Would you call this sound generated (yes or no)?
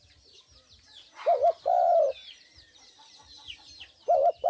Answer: no